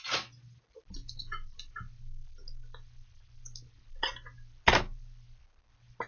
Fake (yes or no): no